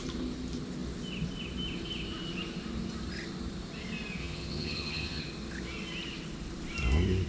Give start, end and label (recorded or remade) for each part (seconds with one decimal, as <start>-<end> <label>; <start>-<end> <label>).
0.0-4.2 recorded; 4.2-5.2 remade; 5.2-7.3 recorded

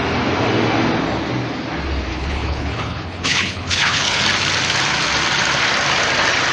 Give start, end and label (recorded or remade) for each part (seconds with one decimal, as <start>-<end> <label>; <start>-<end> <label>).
0.0-2.1 recorded; 2.1-4.2 remade; 4.2-6.5 recorded

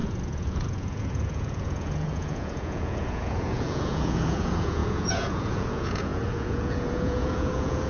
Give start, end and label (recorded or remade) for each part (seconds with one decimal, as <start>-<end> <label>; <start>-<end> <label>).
0.0-7.9 remade